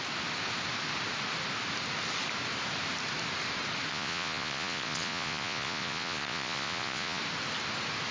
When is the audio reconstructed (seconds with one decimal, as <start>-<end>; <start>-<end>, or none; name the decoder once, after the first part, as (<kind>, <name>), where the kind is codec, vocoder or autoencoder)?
3.9-7.2 (vocoder, Vocos)